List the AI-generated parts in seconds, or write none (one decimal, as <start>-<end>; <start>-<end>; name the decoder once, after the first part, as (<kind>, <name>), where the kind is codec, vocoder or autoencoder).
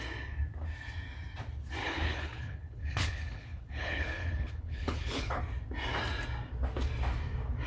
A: 1.8-5.4 (codec, HILCodec)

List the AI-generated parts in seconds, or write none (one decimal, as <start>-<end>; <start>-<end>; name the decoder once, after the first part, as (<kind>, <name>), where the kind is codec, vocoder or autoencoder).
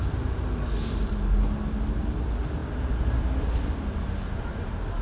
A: none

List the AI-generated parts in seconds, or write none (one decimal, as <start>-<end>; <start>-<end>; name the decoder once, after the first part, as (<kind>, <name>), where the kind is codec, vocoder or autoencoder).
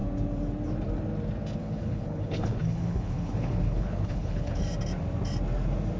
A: 1.6-4.6 (codec, HILCodec)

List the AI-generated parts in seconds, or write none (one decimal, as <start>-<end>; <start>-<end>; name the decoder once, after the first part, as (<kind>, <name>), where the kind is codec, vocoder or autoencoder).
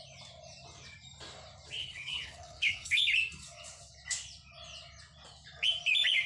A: 1.8-3.0 (codec, HILCodec)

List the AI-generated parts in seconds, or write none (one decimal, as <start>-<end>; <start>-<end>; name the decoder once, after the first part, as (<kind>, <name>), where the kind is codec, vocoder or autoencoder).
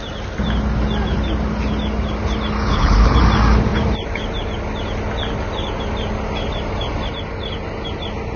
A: 2.7-3.2 (codec, HILCodec)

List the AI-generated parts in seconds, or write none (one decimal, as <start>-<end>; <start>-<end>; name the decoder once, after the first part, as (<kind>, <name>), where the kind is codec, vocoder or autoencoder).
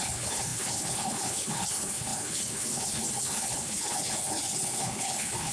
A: 0.0-5.5 (codec, HILCodec)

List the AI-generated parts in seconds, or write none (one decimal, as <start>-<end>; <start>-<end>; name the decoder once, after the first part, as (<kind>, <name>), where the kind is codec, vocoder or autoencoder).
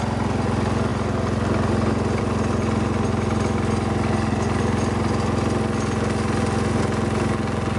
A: none